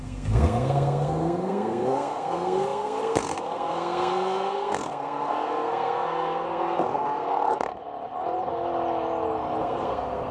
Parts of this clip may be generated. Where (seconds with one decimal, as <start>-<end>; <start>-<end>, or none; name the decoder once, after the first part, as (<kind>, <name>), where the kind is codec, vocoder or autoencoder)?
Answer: 0.0-7.8 (codec, SNAC); 9.6-10.3